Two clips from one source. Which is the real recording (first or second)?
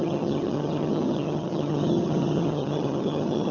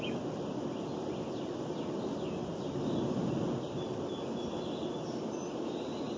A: second